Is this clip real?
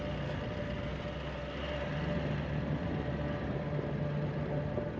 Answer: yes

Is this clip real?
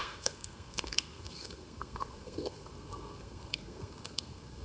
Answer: no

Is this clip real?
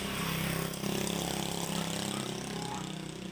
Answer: yes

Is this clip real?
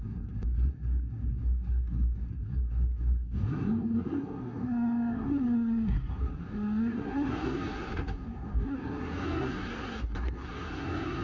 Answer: no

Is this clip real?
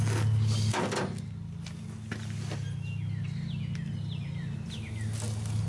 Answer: yes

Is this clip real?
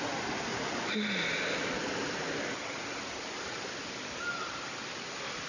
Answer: yes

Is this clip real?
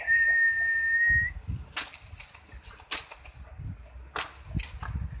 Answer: yes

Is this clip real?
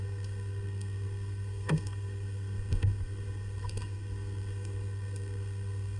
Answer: no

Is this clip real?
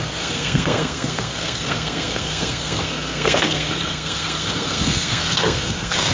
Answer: no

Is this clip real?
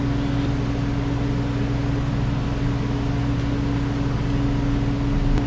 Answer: yes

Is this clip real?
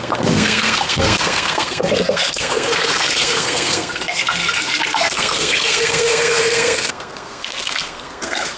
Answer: no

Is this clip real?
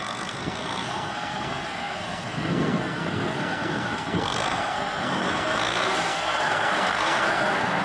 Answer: no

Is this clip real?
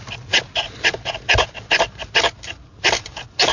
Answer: yes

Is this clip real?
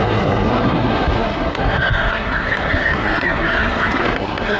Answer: no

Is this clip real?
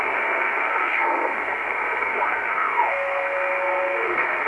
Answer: no